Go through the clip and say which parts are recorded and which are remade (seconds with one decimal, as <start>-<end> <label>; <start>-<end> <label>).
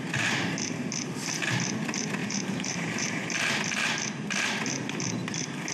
0.0-2.2 recorded; 2.2-3.2 remade; 3.2-5.7 recorded